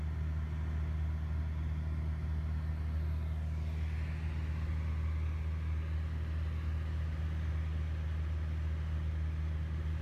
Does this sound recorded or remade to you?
recorded